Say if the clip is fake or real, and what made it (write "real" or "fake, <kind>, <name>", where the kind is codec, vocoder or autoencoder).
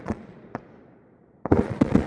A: fake, vocoder, Vocos